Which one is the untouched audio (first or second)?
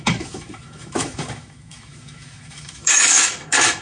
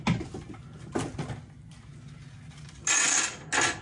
second